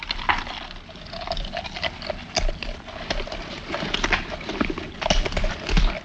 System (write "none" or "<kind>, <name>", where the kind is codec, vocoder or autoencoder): none